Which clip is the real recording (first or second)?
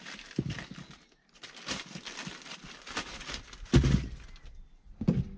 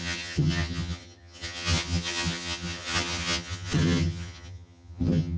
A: first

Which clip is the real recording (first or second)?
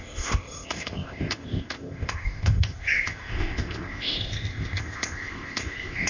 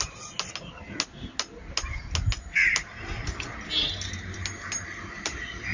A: second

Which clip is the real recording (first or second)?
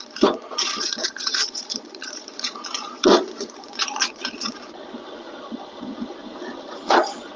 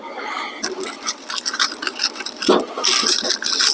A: second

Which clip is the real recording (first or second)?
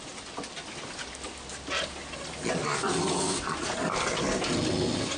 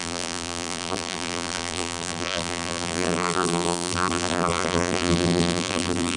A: first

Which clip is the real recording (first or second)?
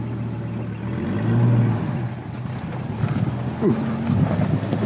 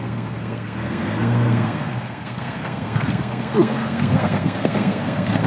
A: first